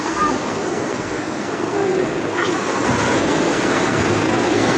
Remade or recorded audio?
remade